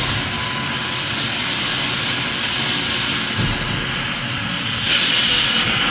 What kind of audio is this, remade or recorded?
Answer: recorded